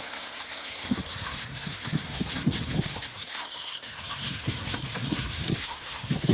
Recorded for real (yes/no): no